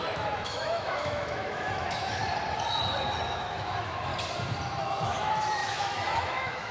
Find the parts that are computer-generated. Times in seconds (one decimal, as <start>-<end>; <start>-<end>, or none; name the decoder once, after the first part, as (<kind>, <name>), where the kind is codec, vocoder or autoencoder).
0.0-2.2 (autoencoder, DAC-VAE); 3.3-4.1; 4.8-6.7